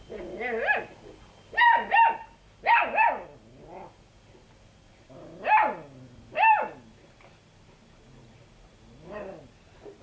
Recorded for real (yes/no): yes